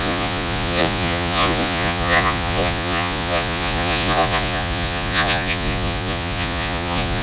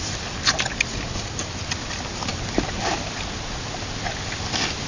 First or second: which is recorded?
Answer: second